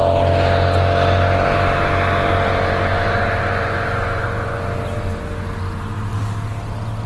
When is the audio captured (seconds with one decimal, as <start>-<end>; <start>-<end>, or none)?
0.0-2.9; 4.6-7.1